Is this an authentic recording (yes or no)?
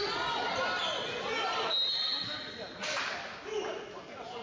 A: yes